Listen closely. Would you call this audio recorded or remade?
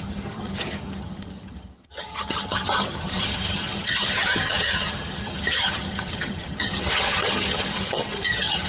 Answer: remade